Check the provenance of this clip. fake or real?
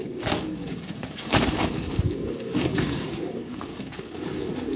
fake